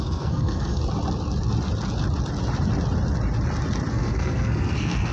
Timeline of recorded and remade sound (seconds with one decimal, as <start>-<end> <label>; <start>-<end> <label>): 0.0-0.8 remade; 0.8-3.9 recorded; 3.9-5.1 remade